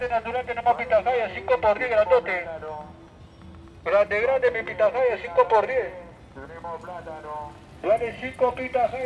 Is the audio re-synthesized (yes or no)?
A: no